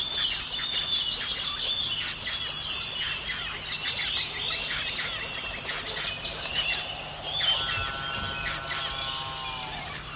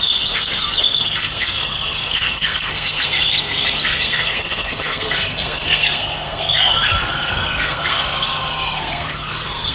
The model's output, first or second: second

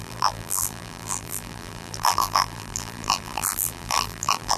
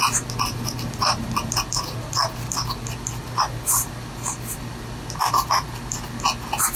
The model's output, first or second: first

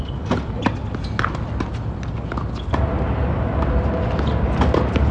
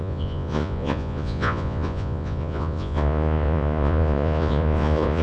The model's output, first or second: second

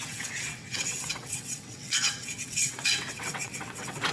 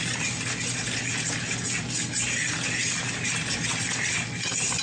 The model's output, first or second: first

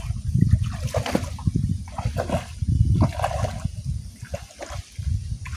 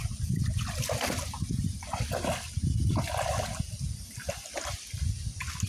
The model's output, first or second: second